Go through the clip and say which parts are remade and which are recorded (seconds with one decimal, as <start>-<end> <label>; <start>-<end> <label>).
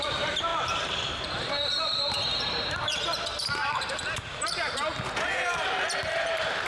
0.0-4.9 remade; 4.9-6.1 recorded; 6.1-6.7 remade